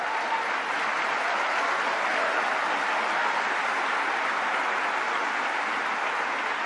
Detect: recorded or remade recorded